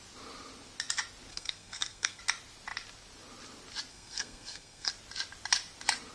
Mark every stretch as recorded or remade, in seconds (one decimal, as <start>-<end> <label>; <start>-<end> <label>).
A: 0.0-1.3 recorded; 1.3-2.2 remade; 2.2-3.9 recorded; 3.9-4.9 remade; 4.9-6.1 recorded